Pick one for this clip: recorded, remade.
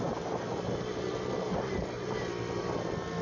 recorded